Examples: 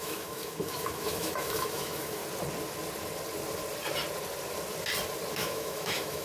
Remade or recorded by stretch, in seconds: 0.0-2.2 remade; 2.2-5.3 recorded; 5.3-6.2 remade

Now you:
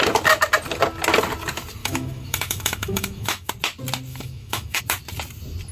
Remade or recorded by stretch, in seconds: 0.0-1.8 recorded; 1.8-3.5 remade; 3.5-4.1 recorded; 4.1-4.8 remade; 4.8-5.7 recorded

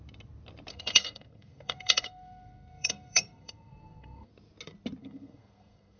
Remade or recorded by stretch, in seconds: 0.0-0.7 recorded; 0.7-4.3 remade; 4.3-5.0 recorded; 5.0-6.0 remade

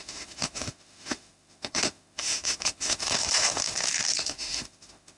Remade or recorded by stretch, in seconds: 0.0-5.2 remade

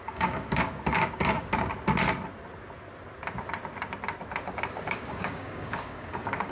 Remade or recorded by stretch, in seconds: 0.0-1.7 remade; 1.7-4.9 recorded; 4.9-6.5 remade

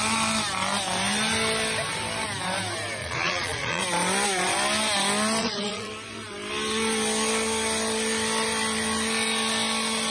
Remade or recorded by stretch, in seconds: 0.0-3.0 recorded; 3.0-3.8 remade; 3.8-5.4 recorded; 5.4-5.9 remade; 5.9-10.1 recorded

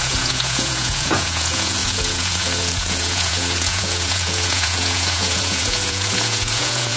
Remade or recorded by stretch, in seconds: 0.0-7.0 remade

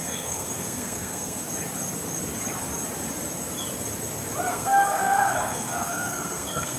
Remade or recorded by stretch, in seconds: 0.0-1.4 remade; 1.4-4.5 recorded; 4.5-6.8 remade